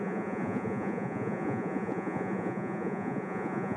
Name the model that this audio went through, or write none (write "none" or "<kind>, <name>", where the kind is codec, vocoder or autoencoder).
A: vocoder, Vocos